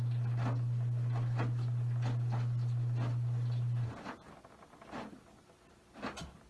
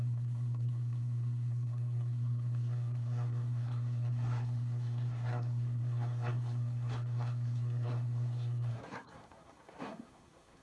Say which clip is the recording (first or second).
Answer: first